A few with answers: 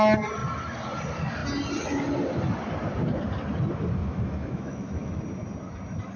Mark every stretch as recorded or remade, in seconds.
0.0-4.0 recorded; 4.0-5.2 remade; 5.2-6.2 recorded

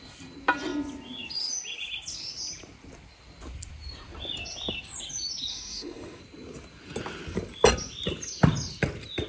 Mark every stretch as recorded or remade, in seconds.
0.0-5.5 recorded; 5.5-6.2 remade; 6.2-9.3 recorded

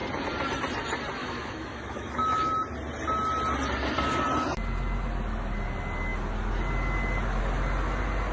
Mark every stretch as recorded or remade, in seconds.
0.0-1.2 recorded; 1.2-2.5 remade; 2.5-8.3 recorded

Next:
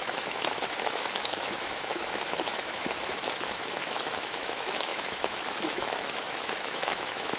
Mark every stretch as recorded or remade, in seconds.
0.0-7.4 remade

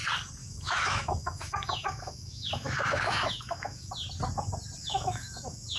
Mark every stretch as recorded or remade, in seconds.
0.0-0.4 recorded; 0.4-3.9 remade; 3.9-4.8 recorded; 4.8-5.8 remade

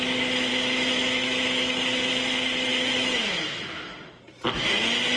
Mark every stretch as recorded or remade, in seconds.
0.0-0.5 recorded; 0.5-2.1 remade; 2.1-2.7 recorded; 2.7-4.2 remade; 4.2-5.2 recorded

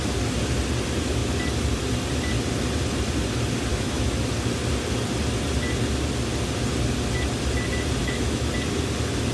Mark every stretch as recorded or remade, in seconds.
0.0-3.7 recorded; 3.7-4.2 remade; 4.2-8.0 recorded; 8.0-8.5 remade; 8.5-9.3 recorded

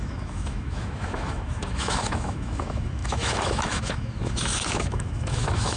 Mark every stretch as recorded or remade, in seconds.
0.0-5.8 remade